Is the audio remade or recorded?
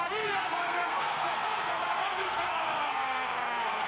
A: remade